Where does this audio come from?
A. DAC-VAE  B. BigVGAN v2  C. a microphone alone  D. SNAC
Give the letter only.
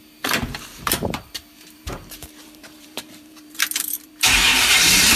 B